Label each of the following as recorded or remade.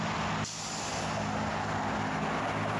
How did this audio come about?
recorded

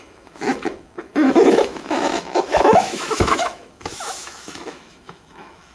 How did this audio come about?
remade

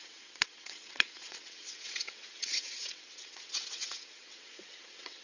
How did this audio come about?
remade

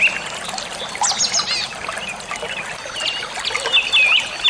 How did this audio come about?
recorded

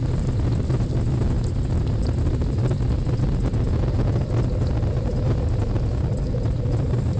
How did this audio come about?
recorded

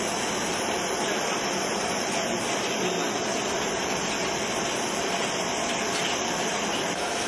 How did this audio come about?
remade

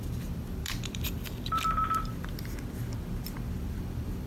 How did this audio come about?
remade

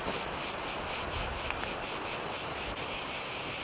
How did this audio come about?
recorded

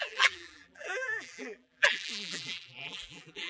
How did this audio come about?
remade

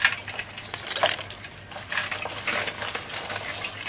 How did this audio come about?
recorded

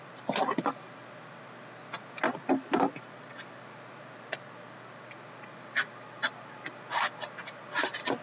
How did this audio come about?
recorded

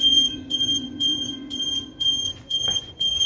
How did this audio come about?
remade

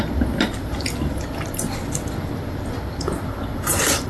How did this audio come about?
recorded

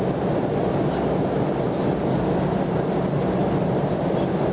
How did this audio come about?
recorded